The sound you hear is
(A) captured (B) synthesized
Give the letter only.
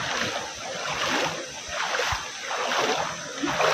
A